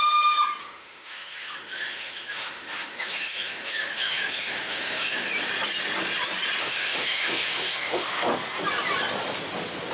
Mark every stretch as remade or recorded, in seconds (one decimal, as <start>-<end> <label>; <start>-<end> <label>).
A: 0.0-0.6 recorded; 0.6-5.3 remade; 5.3-6.6 recorded; 6.6-8.3 remade; 8.3-9.9 recorded

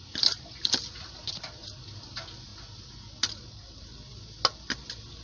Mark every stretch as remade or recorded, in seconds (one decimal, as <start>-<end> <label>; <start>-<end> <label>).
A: 0.0-5.2 recorded

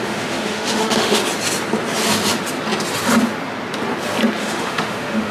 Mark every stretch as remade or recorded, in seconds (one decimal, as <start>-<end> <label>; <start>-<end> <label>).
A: 0.0-1.2 remade; 1.2-4.4 recorded; 4.4-5.3 remade